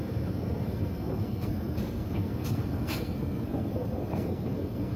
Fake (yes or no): yes